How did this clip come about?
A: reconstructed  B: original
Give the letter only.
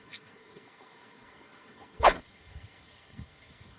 A